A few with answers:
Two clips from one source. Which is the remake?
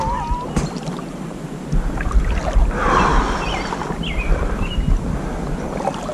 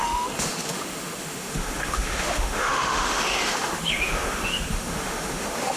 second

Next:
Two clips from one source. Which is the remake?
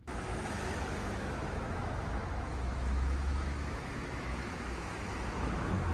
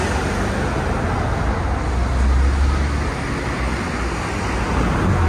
first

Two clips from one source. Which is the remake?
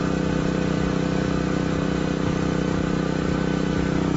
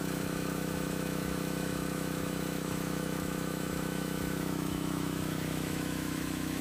second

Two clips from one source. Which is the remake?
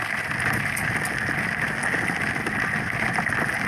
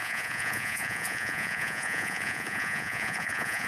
second